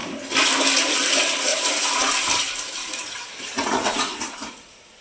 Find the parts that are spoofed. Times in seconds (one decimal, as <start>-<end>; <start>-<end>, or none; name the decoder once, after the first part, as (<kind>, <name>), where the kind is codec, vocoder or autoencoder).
1.5-2.1 (vocoder, Vocos); 2.8-5.0